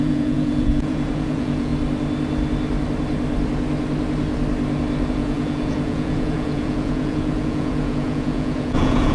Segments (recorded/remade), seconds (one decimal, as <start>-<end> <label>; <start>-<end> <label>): 0.0-1.7 remade; 1.7-5.1 recorded; 5.1-9.1 remade